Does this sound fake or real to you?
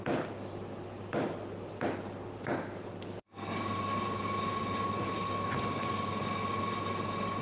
real